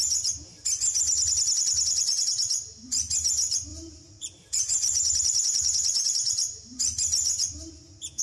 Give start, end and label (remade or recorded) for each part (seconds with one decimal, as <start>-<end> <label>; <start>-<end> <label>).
0.0-3.7 recorded; 3.7-7.7 remade; 7.7-8.2 recorded